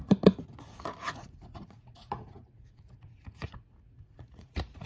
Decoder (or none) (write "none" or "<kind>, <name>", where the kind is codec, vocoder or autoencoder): vocoder, Vocos